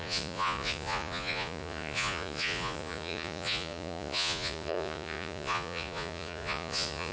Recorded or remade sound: remade